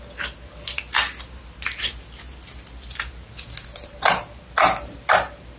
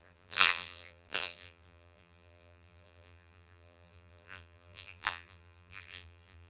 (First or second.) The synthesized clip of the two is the second